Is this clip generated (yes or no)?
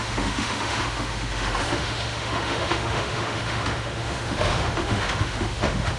yes